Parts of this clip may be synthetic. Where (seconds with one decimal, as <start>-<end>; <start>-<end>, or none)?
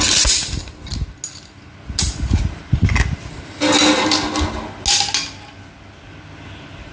none